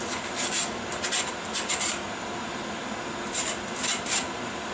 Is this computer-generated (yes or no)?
no